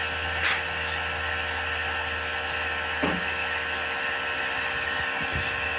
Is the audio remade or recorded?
recorded